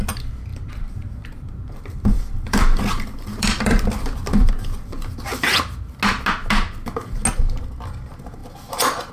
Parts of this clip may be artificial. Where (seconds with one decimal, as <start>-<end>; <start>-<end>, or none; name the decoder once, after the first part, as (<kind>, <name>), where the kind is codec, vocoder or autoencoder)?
0.5-4.5 (vocoder, BigVGAN v2)